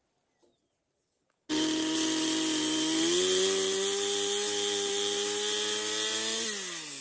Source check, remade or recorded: recorded